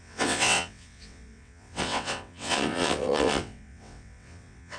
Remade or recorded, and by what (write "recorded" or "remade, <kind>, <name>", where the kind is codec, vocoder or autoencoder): remade, vocoder, WaveNeXt